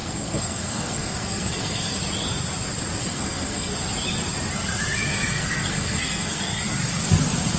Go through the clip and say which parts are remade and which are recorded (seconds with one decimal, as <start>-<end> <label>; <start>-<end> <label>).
0.0-2.0 remade; 2.0-3.0 recorded; 3.0-3.7 remade; 3.7-5.1 recorded; 5.1-6.6 remade; 6.6-7.6 recorded